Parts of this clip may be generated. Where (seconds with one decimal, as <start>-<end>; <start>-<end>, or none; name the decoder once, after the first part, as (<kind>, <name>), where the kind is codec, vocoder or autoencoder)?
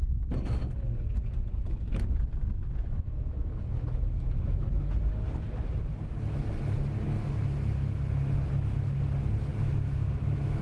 2.6-5.0 (autoencoder, DAC-VAE); 9.5-10.6